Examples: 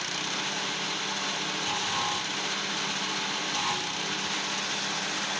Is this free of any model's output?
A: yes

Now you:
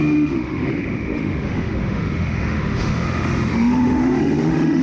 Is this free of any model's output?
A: no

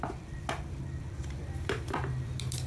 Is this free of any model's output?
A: no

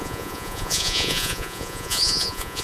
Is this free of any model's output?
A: no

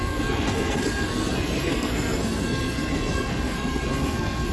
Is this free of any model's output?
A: no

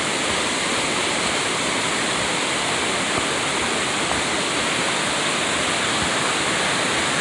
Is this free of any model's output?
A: yes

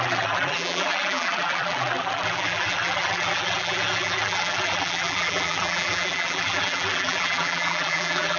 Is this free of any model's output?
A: no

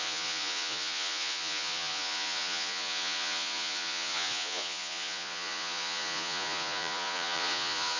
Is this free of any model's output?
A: no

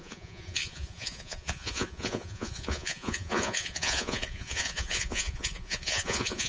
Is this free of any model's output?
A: no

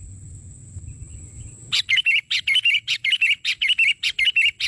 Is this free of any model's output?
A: yes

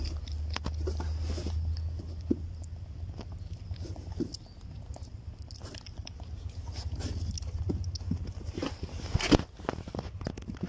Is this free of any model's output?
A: yes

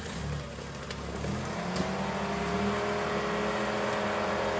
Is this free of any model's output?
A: yes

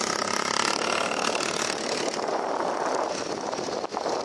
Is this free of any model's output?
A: yes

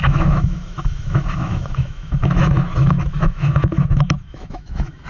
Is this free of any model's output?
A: no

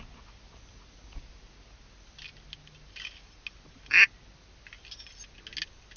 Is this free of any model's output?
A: yes